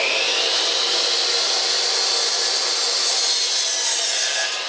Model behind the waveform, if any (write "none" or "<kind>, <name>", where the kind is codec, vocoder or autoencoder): none